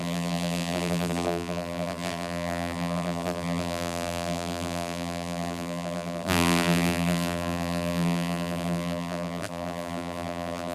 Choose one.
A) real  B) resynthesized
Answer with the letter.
B